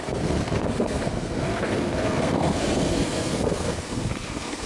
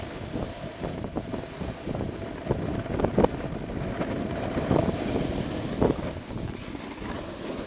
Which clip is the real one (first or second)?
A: second